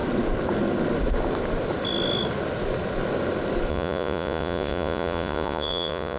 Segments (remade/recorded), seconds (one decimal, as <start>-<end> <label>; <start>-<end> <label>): 0.0-3.7 recorded; 3.7-6.2 remade